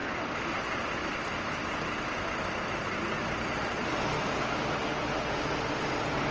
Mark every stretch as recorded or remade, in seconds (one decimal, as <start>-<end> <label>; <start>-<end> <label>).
0.0-6.3 recorded